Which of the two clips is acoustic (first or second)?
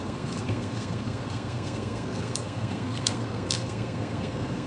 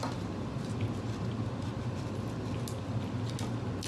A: second